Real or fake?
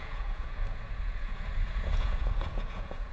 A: fake